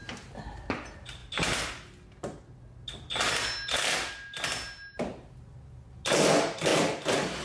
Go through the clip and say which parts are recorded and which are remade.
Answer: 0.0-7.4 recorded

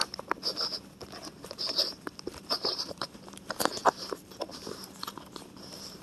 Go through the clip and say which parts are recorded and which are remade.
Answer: 0.0-1.3 recorded; 1.3-6.0 remade

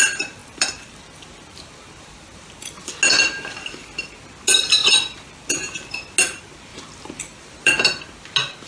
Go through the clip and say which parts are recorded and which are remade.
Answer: 0.0-0.4 recorded; 0.4-2.9 remade; 2.9-4.8 recorded; 4.8-5.4 remade; 5.4-6.7 recorded; 6.7-8.0 remade; 8.0-8.7 recorded

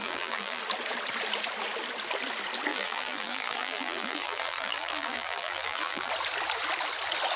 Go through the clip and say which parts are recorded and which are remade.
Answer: 0.0-0.6 remade; 0.6-2.7 recorded; 2.7-6.1 remade; 6.1-7.4 recorded

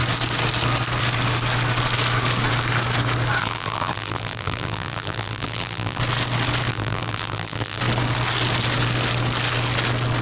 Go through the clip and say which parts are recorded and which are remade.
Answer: 0.0-3.4 recorded; 3.4-6.0 remade; 6.0-6.7 recorded; 6.7-7.8 remade; 7.8-10.2 recorded

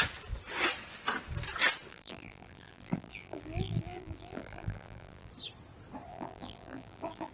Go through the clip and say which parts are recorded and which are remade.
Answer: 0.0-1.9 recorded; 1.9-5.3 remade; 5.3-6.1 recorded; 6.1-7.3 remade